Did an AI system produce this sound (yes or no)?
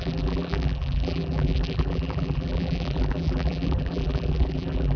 yes